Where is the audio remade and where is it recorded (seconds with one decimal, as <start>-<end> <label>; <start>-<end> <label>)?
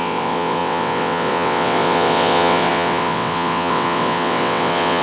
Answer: 0.0-5.0 remade